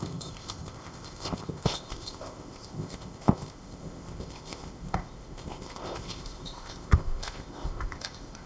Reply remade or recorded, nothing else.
remade